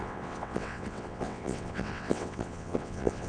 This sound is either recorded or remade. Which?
remade